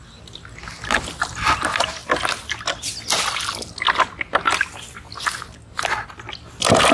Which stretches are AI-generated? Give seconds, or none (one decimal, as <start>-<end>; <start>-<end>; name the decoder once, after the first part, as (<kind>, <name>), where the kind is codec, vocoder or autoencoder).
none